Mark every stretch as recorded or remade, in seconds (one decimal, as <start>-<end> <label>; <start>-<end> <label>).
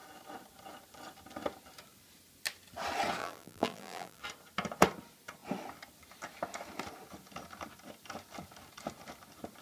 0.0-3.2 recorded; 3.2-4.2 remade; 4.2-9.6 recorded